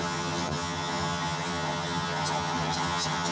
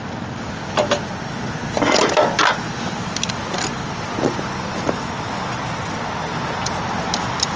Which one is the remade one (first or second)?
first